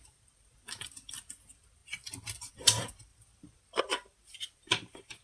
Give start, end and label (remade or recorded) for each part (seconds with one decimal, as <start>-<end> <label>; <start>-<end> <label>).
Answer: 0.0-1.8 remade; 1.8-2.5 recorded; 2.5-5.2 remade